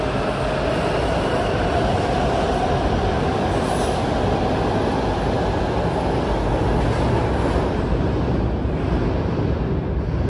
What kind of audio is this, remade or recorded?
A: recorded